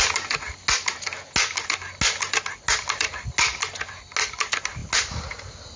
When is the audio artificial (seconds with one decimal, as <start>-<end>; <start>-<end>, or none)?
none